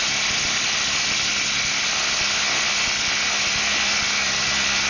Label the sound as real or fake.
real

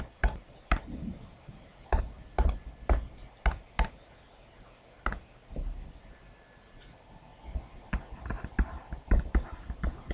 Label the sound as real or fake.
real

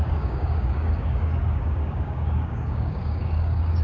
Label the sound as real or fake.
fake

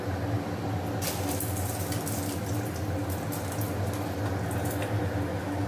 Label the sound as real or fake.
real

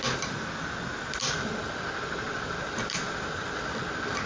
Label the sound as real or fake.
real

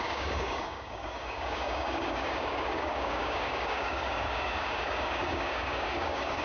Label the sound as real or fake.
fake